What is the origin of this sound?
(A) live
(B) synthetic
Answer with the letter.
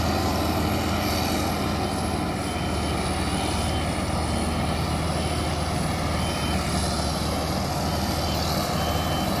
A